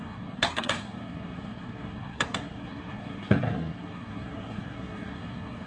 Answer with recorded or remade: remade